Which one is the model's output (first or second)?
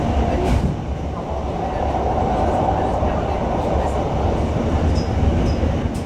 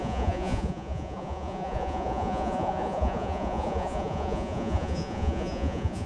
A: second